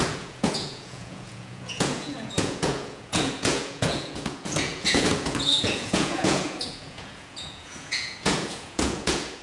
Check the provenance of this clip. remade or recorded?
remade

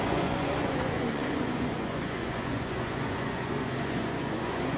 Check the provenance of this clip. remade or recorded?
remade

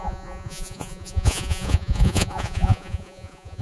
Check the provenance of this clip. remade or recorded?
remade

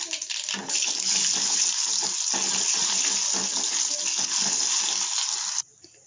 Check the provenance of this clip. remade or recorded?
recorded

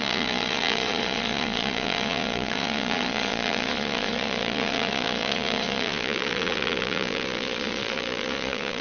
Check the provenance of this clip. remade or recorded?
remade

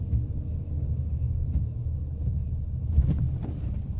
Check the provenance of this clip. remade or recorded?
recorded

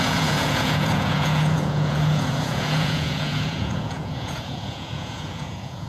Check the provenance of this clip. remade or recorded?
remade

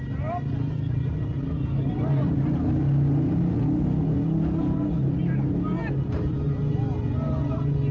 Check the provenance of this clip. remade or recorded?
recorded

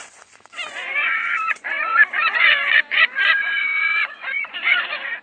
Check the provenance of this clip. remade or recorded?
remade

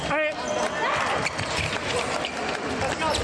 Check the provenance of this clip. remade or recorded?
recorded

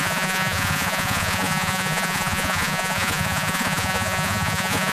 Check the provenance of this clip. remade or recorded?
remade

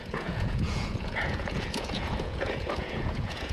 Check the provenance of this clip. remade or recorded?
remade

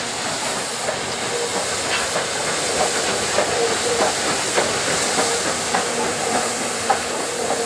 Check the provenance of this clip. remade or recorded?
recorded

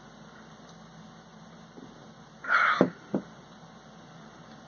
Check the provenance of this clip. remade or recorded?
recorded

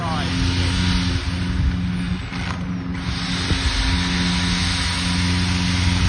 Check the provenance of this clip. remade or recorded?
recorded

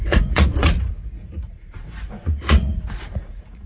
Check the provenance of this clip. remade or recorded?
remade